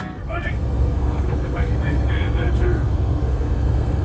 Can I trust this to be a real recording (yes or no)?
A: no